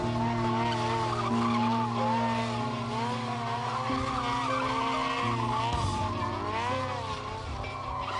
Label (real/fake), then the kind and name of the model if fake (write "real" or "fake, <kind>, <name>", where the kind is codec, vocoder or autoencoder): real